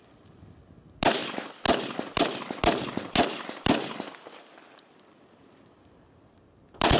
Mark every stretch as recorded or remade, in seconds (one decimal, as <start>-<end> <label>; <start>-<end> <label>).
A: 0.0-7.0 recorded